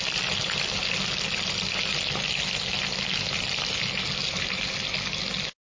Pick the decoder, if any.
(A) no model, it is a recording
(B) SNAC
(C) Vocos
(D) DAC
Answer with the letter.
A